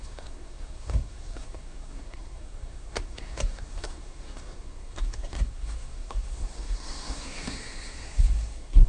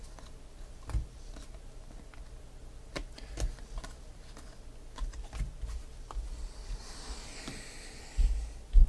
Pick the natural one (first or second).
second